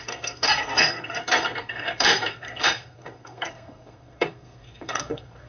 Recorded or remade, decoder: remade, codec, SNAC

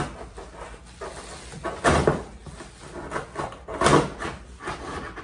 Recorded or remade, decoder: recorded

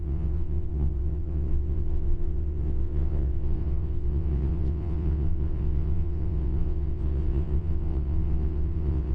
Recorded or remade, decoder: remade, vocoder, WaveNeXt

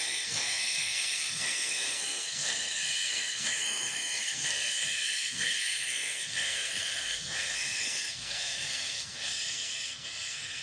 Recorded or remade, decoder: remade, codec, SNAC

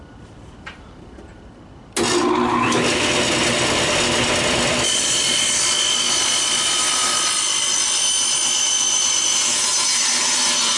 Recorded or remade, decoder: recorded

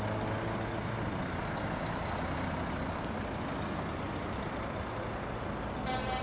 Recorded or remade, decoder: recorded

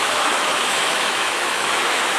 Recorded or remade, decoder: remade, autoencoder, DAC-VAE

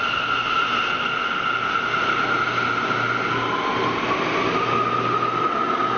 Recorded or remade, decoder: recorded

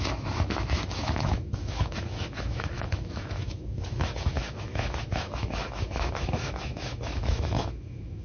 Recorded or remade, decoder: remade, autoencoder, DAC-VAE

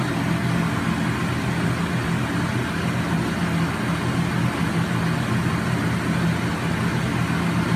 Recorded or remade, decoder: recorded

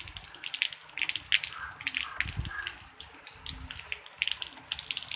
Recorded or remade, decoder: recorded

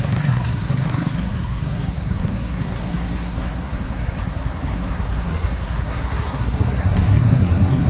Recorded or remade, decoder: remade, codec, SNAC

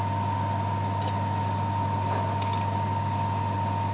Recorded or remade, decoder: recorded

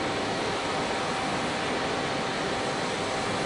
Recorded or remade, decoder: recorded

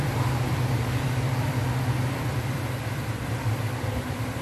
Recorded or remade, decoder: remade, vocoder, BigVGAN v2